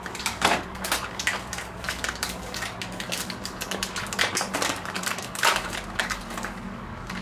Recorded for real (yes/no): no